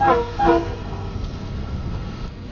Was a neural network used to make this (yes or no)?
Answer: yes